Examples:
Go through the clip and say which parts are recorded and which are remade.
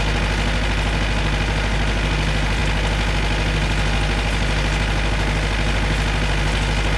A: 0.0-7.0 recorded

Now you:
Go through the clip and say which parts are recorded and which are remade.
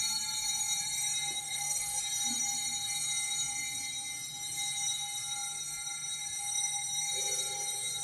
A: 0.0-1.4 recorded; 1.4-2.0 remade; 2.0-8.0 recorded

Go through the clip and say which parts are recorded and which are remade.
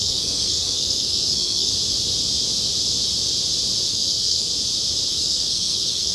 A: 0.0-1.7 remade; 1.7-3.9 recorded; 3.9-4.5 remade; 4.5-5.1 recorded; 5.1-6.1 remade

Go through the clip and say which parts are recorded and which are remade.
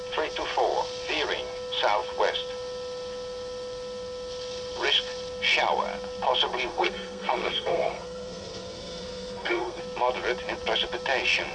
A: 0.0-6.7 recorded; 6.7-9.8 remade; 9.8-11.5 recorded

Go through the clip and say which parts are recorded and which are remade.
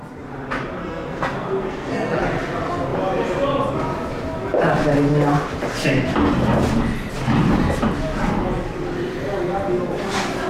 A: 0.0-0.8 recorded; 0.8-2.2 remade; 2.2-10.5 recorded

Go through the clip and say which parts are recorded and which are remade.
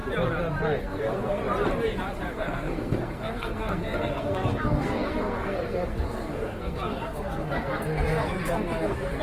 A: 0.0-0.8 recorded; 0.8-1.4 remade; 1.4-2.3 recorded; 2.3-9.2 remade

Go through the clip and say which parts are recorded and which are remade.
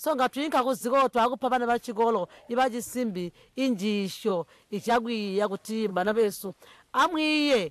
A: 0.0-5.9 recorded; 5.9-6.5 remade; 6.5-7.7 recorded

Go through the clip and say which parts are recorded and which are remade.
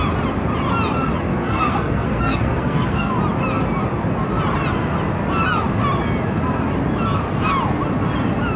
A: 0.0-1.3 recorded; 1.3-3.1 remade; 3.1-8.6 recorded